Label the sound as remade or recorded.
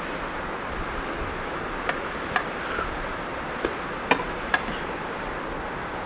recorded